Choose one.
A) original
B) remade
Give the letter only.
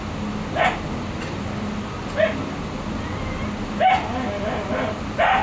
A